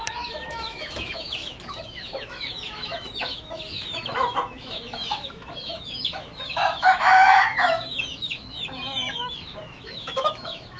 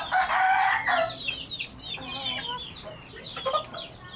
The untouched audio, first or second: second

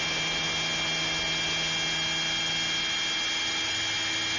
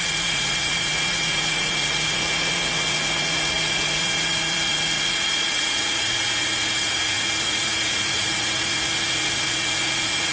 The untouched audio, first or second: first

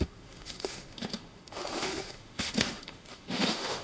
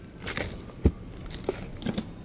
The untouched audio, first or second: second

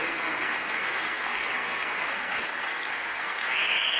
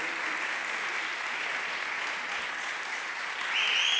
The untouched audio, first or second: second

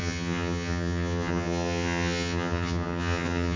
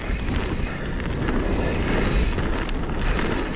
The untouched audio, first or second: second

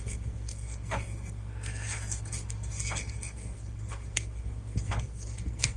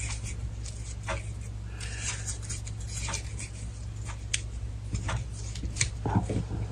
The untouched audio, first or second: second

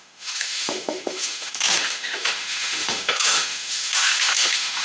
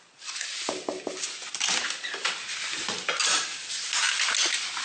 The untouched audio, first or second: second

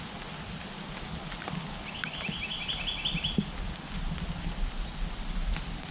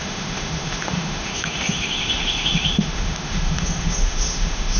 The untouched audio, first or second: first